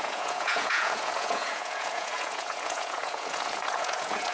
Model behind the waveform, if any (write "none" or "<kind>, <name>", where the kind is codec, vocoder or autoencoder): vocoder, Vocos